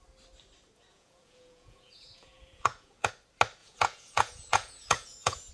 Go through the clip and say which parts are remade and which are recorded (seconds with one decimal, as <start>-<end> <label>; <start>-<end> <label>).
0.0-0.9 recorded; 0.9-3.1 remade; 3.1-3.6 recorded; 3.6-5.5 remade